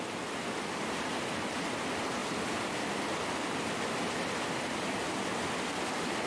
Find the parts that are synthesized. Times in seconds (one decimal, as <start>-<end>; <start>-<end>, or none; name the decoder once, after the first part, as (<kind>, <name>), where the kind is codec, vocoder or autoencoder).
none